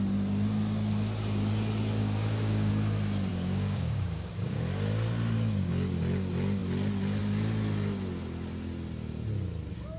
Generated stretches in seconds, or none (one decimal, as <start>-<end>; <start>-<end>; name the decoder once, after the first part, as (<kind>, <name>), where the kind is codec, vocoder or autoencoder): 2.0-2.7 (codec, DAC); 3.3-4.6